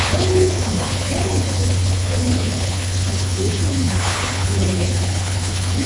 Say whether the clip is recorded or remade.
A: remade